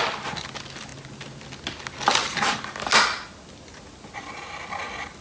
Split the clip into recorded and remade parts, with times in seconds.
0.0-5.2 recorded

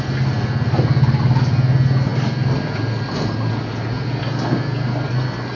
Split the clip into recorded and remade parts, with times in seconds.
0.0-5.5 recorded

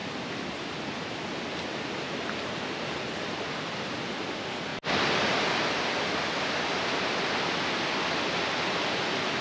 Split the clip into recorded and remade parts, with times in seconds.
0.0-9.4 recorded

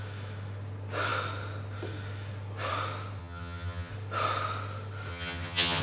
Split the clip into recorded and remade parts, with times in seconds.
0.0-3.2 recorded; 3.2-3.9 remade; 3.9-5.1 recorded; 5.1-5.8 remade